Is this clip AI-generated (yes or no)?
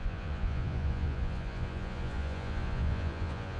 yes